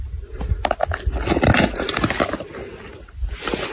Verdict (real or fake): real